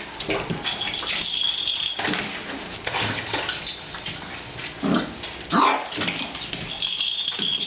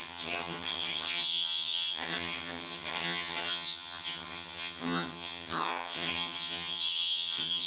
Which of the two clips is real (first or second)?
first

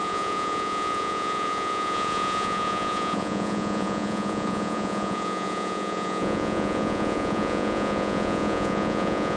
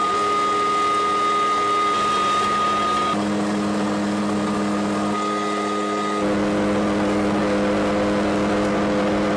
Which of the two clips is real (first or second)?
second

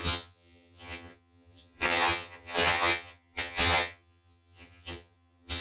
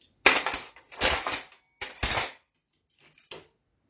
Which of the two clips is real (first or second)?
second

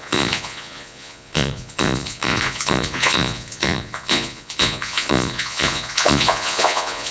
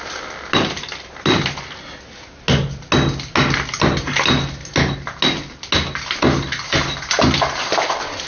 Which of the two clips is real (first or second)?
second